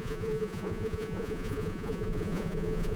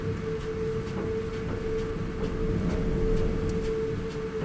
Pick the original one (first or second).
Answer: second